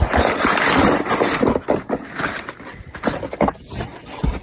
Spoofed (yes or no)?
no